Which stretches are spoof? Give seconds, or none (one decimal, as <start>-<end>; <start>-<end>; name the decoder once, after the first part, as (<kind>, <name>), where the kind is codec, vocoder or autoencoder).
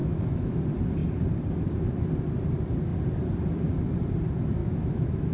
0.0-0.6 (autoencoder, DAC-VAE); 4.6-5.3